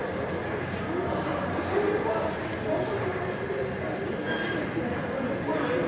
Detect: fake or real real